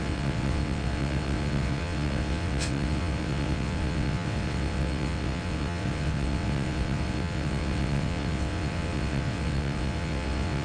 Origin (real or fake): fake